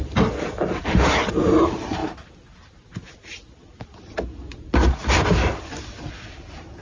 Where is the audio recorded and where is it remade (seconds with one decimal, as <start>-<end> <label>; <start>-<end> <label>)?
0.0-6.8 recorded

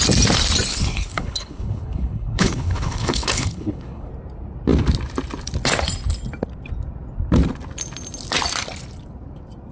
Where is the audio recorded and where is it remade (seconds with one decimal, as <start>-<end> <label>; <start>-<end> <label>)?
0.0-0.7 recorded; 0.7-4.1 remade; 4.1-9.7 recorded